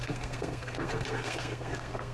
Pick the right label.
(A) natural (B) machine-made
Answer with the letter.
B